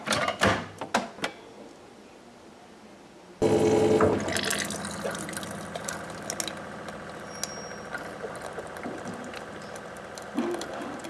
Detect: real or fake real